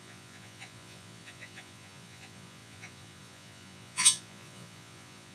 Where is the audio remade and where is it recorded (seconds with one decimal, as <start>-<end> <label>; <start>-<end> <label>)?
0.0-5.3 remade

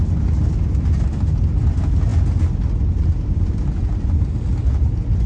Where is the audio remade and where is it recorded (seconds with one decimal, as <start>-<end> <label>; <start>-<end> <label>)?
0.0-5.3 recorded

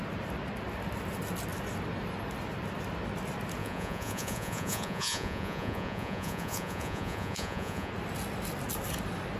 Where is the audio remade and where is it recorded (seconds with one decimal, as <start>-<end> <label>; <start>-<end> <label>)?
0.0-3.6 recorded; 3.6-7.9 remade; 7.9-9.4 recorded

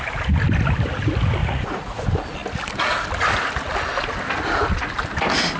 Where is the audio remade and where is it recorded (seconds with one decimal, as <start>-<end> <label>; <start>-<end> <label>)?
0.0-1.4 recorded; 1.4-2.0 remade; 2.0-5.6 recorded